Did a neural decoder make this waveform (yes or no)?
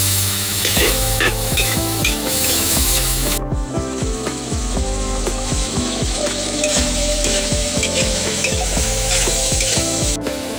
yes